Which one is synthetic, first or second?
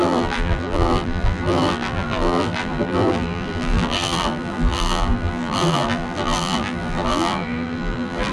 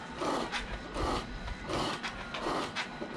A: first